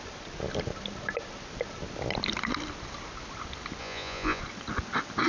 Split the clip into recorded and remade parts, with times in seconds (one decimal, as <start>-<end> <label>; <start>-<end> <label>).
0.0-3.8 recorded; 3.8-4.4 remade; 4.4-5.3 recorded